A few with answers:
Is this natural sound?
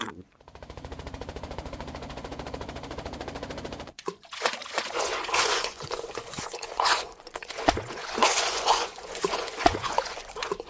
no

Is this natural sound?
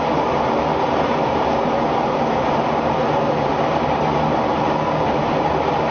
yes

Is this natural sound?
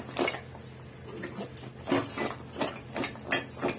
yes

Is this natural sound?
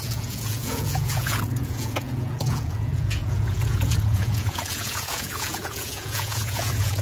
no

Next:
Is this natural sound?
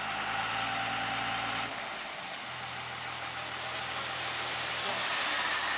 yes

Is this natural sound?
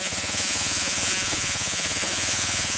no